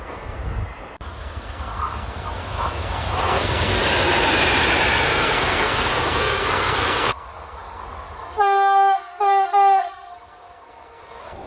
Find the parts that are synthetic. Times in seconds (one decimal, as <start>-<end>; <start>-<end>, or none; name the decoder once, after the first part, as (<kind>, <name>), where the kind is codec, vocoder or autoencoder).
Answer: 0.0-0.6 (codec, SNAC); 1.2-3.8; 5.1-11.5